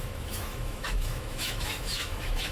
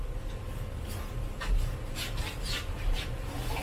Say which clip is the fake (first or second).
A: first